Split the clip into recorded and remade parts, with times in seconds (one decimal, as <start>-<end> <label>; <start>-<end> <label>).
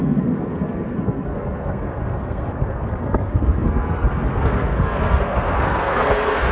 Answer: 0.0-6.5 remade